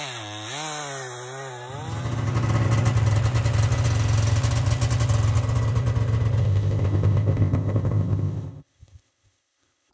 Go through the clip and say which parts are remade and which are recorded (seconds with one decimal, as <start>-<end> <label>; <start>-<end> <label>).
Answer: 0.0-6.4 recorded; 6.4-9.9 remade